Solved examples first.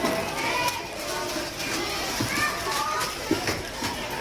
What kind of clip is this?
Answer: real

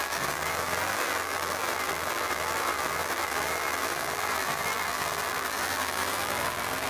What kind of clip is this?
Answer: fake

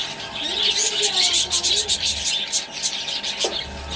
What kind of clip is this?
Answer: real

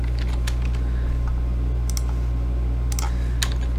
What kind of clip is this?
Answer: real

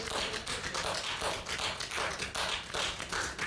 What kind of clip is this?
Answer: real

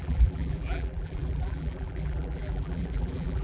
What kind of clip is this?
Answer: fake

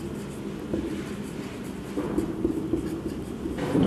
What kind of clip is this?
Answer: fake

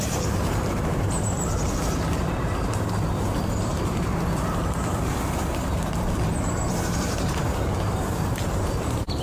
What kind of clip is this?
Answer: fake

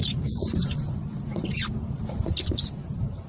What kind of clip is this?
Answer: fake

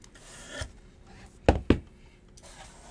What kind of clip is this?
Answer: real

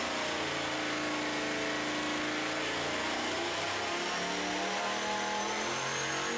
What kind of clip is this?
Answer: real